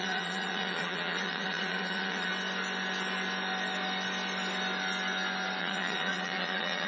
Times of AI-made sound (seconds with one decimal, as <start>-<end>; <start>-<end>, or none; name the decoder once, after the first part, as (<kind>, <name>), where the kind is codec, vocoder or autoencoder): 0.0-2.3 (vocoder, Vocos); 5.6-6.9